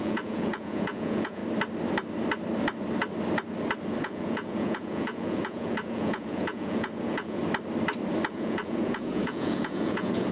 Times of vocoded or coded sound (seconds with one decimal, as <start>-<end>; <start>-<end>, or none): 0.0-1.4; 4.0-7.4; 8.3-10.3